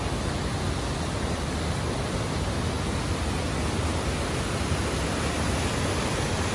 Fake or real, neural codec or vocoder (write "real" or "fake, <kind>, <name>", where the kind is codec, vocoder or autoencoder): real